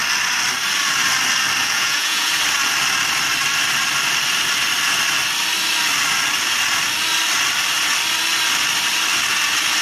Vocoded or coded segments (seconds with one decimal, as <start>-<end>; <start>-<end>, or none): 1.6-2.3